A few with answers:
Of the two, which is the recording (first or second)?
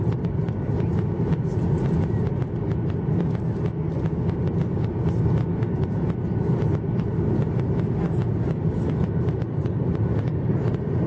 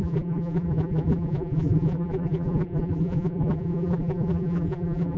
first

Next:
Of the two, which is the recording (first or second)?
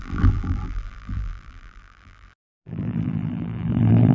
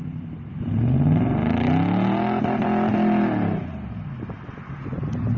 second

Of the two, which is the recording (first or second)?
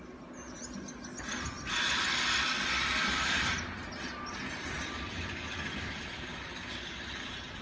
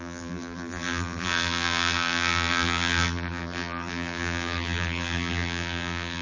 first